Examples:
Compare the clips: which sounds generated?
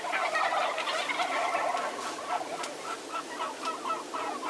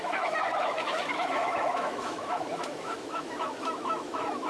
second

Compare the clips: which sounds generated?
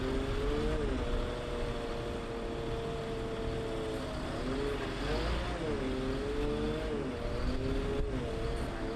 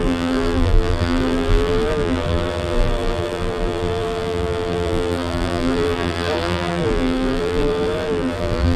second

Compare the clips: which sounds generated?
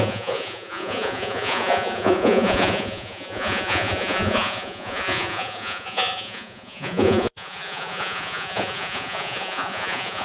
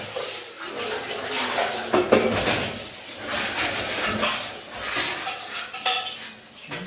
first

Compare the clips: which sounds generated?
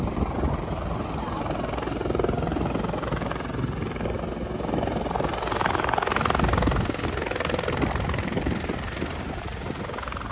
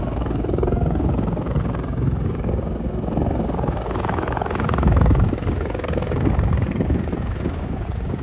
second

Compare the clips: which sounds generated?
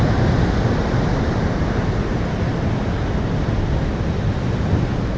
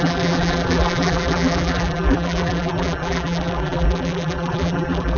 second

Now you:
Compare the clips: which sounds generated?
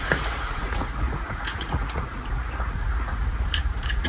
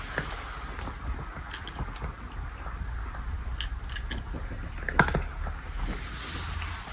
first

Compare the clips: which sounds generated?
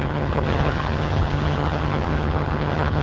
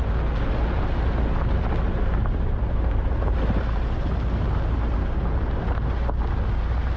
first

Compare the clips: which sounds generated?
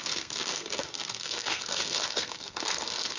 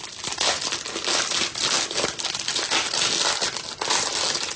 first